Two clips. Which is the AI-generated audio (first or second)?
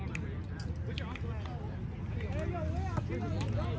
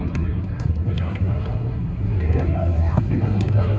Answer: second